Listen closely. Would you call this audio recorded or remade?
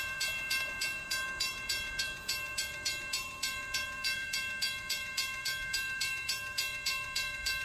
remade